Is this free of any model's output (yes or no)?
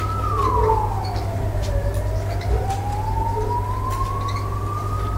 yes